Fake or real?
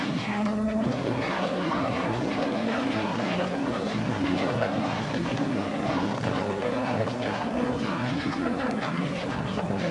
fake